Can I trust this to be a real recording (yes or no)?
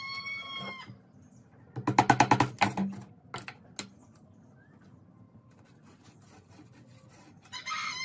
yes